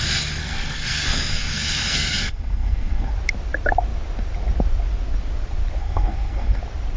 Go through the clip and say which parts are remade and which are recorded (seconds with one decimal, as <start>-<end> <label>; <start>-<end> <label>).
0.0-0.4 recorded; 0.4-3.1 remade; 3.1-5.8 recorded; 5.8-6.6 remade; 6.6-7.0 recorded